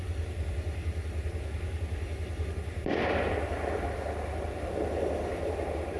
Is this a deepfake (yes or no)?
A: no